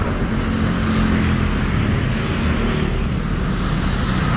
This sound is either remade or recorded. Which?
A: recorded